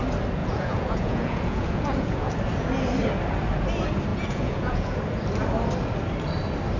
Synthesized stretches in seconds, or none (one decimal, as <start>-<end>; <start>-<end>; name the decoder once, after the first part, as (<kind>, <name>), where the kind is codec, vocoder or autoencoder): 0.4-2.3 (vocoder, Vocos); 4.1-5.0

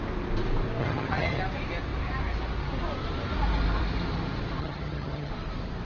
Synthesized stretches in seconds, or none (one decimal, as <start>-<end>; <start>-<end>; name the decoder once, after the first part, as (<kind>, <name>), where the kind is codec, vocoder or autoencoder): 0.8-1.4 (vocoder, HiFi-GAN); 4.6-5.3

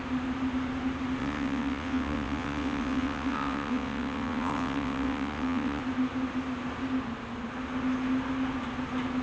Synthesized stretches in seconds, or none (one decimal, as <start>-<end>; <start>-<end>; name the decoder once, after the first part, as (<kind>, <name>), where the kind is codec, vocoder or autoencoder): 1.2-5.8 (vocoder, WaveNeXt)

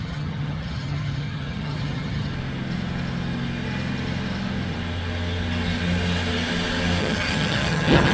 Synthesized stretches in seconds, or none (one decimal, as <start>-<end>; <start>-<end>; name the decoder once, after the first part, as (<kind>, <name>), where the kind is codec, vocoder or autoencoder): 0.0-2.3 (vocoder, HiFi-GAN); 7.0-8.1

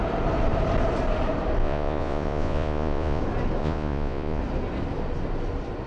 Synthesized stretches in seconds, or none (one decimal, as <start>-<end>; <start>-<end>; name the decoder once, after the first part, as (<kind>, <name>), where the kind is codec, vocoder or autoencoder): 1.6-3.2 (vocoder, Vocos); 3.6-4.4

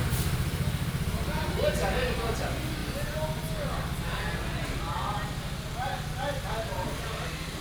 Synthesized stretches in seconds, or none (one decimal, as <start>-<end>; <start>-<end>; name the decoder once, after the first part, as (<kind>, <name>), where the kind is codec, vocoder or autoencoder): none

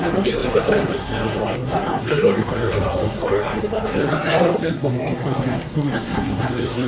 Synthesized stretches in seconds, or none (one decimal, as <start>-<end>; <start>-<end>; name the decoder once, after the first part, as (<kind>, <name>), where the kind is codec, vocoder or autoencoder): 0.0-6.9 (codec, SNAC)

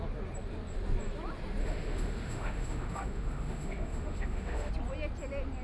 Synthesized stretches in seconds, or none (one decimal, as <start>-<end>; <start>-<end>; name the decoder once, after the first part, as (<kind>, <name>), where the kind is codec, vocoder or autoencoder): 1.6-4.7 (autoencoder, DAC-VAE)